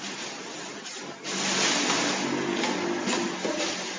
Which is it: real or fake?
real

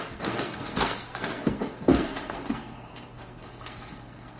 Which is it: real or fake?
fake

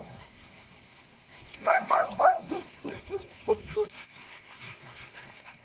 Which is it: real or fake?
fake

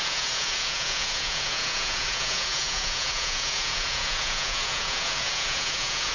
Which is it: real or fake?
fake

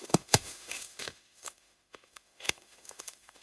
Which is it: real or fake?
fake